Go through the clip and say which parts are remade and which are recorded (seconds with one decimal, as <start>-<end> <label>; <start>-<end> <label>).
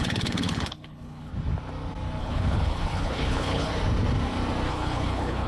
0.0-1.3 remade; 1.3-2.2 recorded; 2.2-3.7 remade; 3.7-4.7 recorded; 4.7-5.5 remade